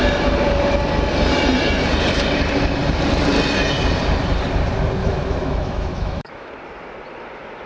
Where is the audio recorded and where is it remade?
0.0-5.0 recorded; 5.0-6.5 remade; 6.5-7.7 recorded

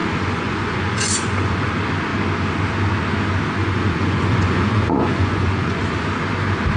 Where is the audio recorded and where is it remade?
0.0-1.7 remade; 1.7-3.6 recorded; 3.6-5.8 remade; 5.8-6.8 recorded

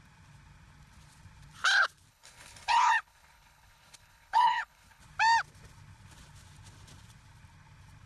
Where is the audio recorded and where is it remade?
0.0-2.1 recorded; 2.1-5.0 remade; 5.0-8.1 recorded

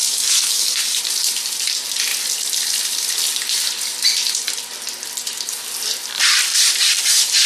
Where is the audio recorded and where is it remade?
0.0-1.0 remade; 1.0-7.5 recorded

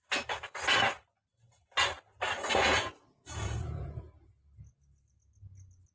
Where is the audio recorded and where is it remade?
0.0-2.7 recorded; 2.7-4.3 remade; 4.3-5.9 recorded